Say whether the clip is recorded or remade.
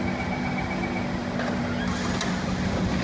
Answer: recorded